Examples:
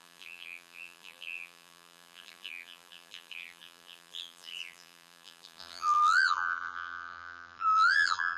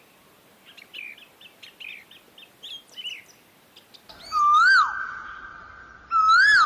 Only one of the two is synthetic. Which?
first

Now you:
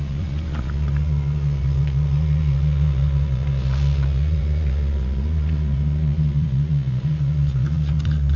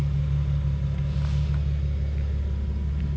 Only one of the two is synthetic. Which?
first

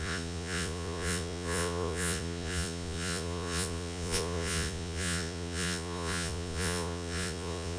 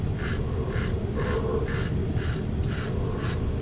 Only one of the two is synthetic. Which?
first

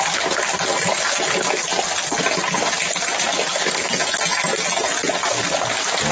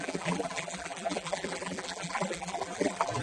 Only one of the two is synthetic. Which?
second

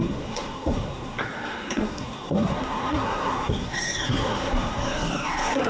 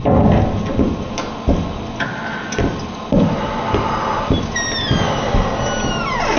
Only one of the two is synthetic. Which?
first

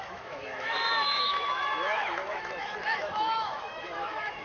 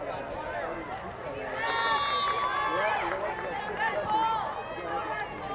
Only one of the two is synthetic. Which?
first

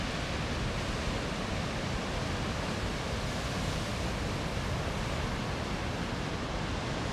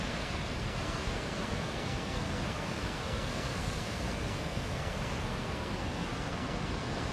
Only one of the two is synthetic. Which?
second